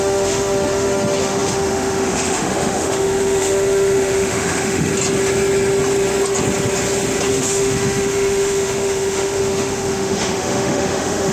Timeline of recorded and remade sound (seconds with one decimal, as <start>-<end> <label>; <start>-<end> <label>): 0.0-4.9 remade; 4.9-7.3 recorded; 7.3-11.3 remade